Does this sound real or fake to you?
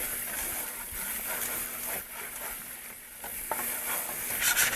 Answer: real